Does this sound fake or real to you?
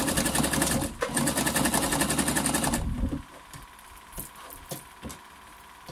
real